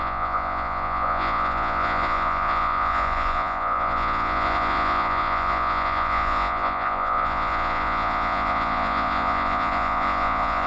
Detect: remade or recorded remade